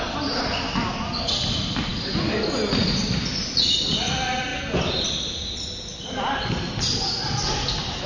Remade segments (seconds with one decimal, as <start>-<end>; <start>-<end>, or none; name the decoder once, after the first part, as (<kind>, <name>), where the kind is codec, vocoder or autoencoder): none

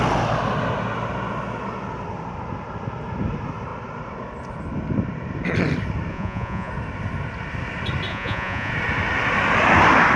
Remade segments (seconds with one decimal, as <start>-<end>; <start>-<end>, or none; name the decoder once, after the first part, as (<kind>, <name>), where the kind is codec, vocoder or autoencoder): 6.1-6.7 (vocoder, Vocos); 8.1-8.7

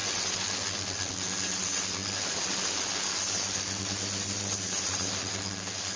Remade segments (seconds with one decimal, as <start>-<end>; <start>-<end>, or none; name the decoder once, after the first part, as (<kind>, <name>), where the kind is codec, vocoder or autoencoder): none

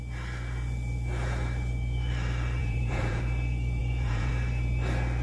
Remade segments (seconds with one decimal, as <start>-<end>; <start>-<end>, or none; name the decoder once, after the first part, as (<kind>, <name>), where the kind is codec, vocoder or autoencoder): 2.6-3.2 (vocoder, Vocos); 3.8-4.3

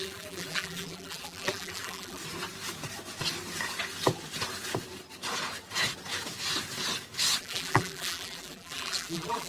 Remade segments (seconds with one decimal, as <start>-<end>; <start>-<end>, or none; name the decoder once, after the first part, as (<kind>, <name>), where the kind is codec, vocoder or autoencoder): 0.0-2.2 (vocoder, BigVGAN v2); 7.4-9.5

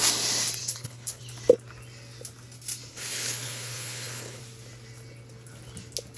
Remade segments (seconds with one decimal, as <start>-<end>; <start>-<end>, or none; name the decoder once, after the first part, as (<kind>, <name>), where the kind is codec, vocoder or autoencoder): 0.6-1.2 (codec, HILCodec); 2.9-4.4